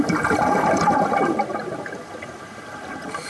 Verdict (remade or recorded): remade